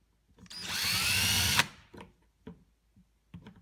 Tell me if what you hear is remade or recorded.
recorded